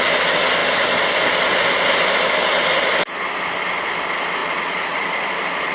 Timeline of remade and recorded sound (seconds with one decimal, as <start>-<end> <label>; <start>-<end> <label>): 0.0-4.4 recorded; 4.4-5.1 remade; 5.1-5.7 recorded